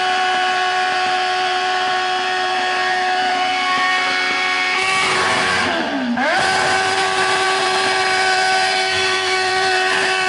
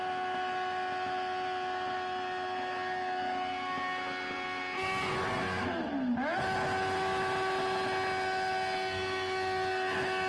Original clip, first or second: second